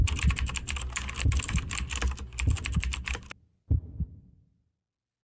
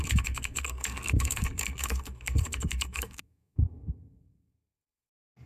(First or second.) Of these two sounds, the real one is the first